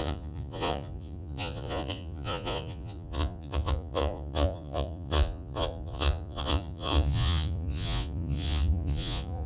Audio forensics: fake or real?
fake